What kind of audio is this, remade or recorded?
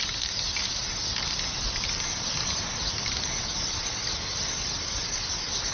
recorded